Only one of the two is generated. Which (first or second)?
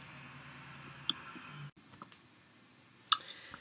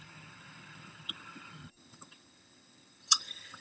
second